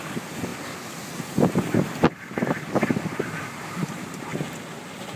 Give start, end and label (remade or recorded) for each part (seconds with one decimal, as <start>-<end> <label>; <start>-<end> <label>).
0.0-5.2 recorded